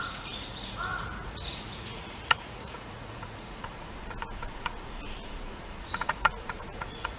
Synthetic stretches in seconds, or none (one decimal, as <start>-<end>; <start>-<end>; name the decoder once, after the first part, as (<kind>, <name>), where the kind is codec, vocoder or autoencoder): 0.0-7.2 (vocoder, Vocos)